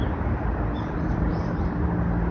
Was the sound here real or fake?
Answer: real